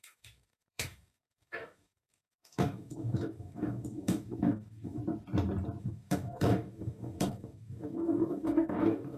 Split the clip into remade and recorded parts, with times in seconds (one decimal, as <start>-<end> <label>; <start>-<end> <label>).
0.0-5.0 remade; 5.0-5.8 recorded; 5.8-9.2 remade